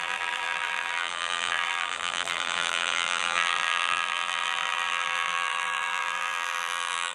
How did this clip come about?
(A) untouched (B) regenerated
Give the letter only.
B